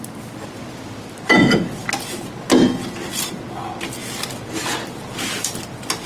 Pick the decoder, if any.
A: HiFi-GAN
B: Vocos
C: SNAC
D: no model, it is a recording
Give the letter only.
D